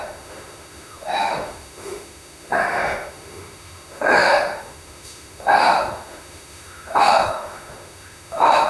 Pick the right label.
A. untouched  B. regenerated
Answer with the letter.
B